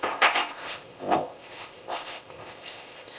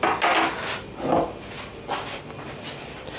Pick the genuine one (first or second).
second